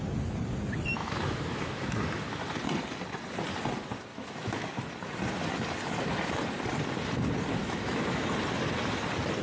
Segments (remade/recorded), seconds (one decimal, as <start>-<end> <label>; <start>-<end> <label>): 0.0-1.0 recorded; 1.0-2.4 remade; 2.4-4.1 recorded; 4.1-4.8 remade; 4.8-7.6 recorded; 7.6-8.3 remade; 8.3-9.4 recorded

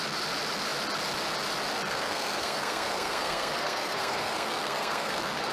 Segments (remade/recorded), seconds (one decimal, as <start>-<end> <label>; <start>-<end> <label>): 0.0-1.9 recorded; 1.9-5.5 remade

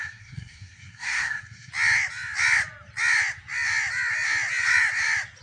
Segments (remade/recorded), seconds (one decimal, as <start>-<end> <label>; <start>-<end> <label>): 0.0-1.7 remade; 1.7-5.4 recorded

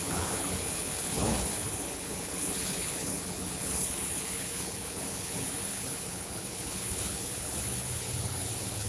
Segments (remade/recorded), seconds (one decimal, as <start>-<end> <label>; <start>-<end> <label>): 0.0-8.9 remade

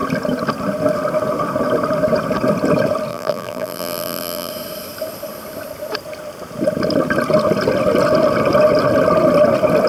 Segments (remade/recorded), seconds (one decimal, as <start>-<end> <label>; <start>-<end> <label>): 0.0-3.1 recorded; 3.1-4.5 remade; 4.5-9.9 recorded

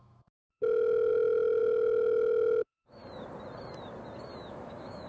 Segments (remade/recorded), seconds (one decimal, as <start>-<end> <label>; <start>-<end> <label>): 0.0-3.0 remade; 3.0-4.5 recorded; 4.5-5.1 remade

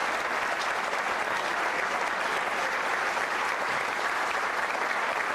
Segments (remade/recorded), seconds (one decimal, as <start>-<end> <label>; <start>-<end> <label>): 0.0-2.3 recorded; 2.3-4.7 remade; 4.7-5.3 recorded